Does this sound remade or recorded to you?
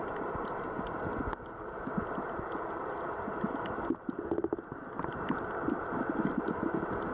recorded